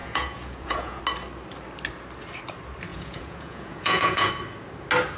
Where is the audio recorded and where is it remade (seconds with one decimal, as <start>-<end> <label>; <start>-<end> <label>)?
0.0-1.0 remade; 1.0-2.9 recorded; 2.9-4.3 remade; 4.3-5.2 recorded